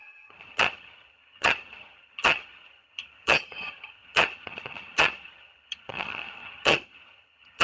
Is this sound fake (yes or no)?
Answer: yes